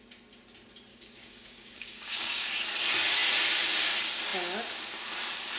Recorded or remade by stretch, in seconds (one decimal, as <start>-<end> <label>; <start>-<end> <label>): 0.0-0.9 recorded; 0.9-2.5 remade; 2.5-5.6 recorded